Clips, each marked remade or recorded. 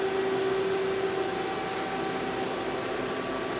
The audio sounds recorded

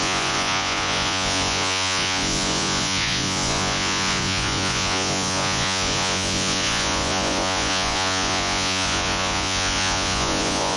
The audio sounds remade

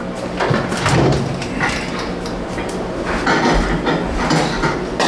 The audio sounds recorded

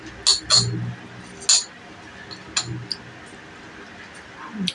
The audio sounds recorded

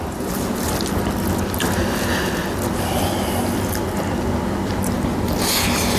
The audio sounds recorded